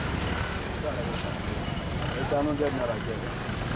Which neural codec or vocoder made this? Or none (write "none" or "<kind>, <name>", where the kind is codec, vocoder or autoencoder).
none